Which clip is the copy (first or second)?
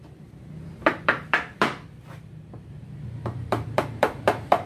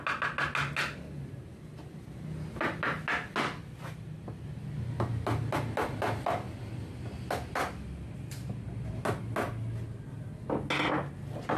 first